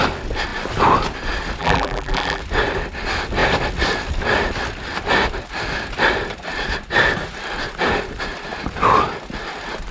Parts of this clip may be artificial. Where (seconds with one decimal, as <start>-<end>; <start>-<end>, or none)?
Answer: 1.6-2.4